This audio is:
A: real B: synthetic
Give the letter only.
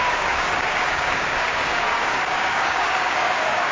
B